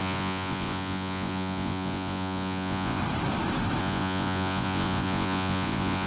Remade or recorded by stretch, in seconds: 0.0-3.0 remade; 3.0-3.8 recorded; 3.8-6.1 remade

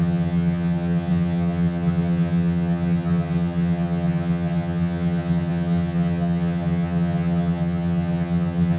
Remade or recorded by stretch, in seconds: 0.0-8.8 remade

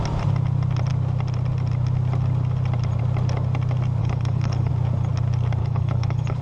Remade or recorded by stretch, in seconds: 0.0-4.0 recorded; 4.0-4.7 remade; 4.7-5.6 recorded; 5.6-6.4 remade

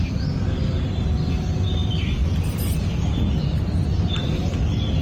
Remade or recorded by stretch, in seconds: 0.0-1.8 recorded; 1.8-3.3 remade; 3.3-5.0 recorded

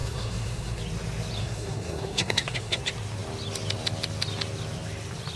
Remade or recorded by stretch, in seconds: 0.0-0.8 remade; 0.8-1.4 recorded; 1.4-2.8 remade; 2.8-5.4 recorded

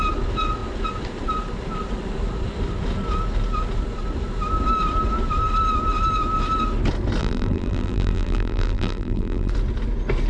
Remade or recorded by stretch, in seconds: 0.0-7.2 recorded; 7.2-9.5 remade; 9.5-10.3 recorded